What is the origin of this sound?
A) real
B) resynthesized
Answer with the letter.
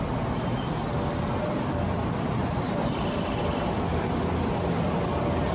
A